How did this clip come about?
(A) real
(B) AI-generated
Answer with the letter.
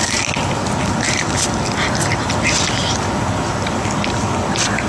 A